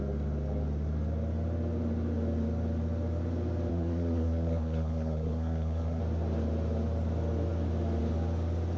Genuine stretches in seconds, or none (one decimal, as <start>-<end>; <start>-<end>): 0.0-3.7; 6.0-8.8